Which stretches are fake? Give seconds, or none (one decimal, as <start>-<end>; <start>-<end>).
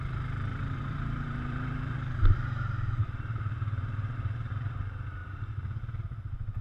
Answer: 0.5-4.5; 5.2-5.8